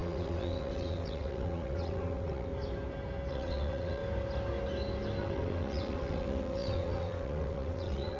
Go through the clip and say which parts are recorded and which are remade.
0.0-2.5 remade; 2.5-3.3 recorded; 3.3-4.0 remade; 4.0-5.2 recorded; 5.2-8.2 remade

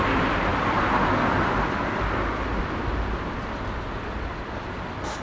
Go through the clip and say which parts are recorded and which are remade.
0.0-5.2 recorded

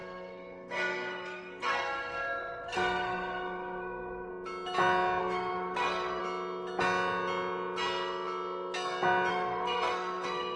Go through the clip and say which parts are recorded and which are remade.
0.0-4.3 remade; 4.3-5.2 recorded; 5.2-6.2 remade; 6.2-9.3 recorded; 9.3-10.6 remade

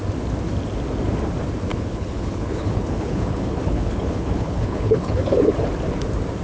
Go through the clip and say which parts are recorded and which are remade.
0.0-1.7 recorded; 1.7-5.5 remade; 5.5-6.4 recorded

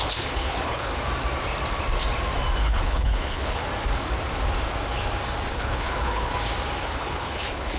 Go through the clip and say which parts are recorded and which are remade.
0.0-0.9 remade; 0.9-2.6 recorded; 2.6-3.6 remade; 3.6-5.5 recorded; 5.5-6.3 remade; 6.3-6.8 recorded; 6.8-7.8 remade

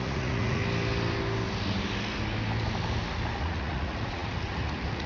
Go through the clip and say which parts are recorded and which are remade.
0.0-0.6 remade; 0.6-3.4 recorded; 3.4-5.1 remade